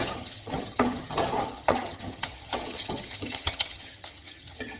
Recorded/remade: remade